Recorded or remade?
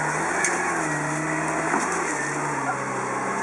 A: recorded